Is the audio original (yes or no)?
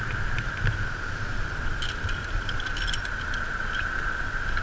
yes